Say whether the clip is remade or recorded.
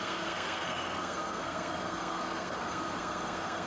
remade